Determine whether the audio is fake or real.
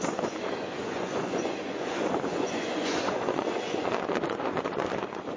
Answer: fake